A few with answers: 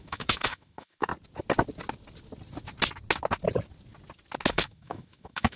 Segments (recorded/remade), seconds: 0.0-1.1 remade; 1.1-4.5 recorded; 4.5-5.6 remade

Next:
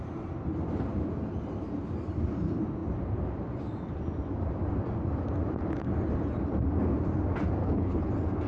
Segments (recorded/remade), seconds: 0.0-7.6 recorded; 7.6-8.1 remade; 8.1-8.5 recorded

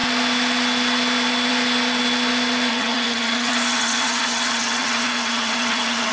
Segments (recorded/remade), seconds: 0.0-2.7 recorded; 2.7-6.1 remade

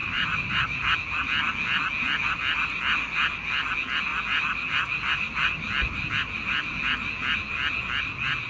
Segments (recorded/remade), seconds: 0.0-0.8 remade; 0.8-8.5 recorded

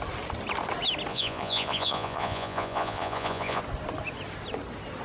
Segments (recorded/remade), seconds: 0.0-1.1 recorded; 1.1-3.6 remade; 3.6-5.0 recorded

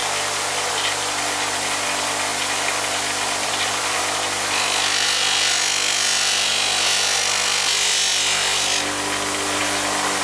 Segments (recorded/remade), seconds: 0.0-0.7 remade; 0.7-2.3 recorded; 2.3-4.0 remade; 4.0-10.2 recorded

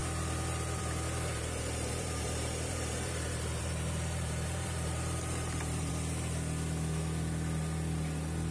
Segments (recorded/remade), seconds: 0.0-1.3 recorded; 1.3-5.9 remade; 5.9-8.5 recorded

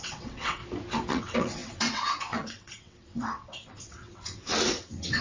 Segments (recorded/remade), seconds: 0.0-0.6 remade; 0.6-1.1 recorded; 1.1-5.2 remade